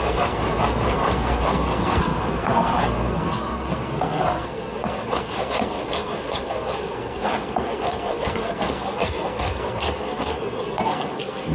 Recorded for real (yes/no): no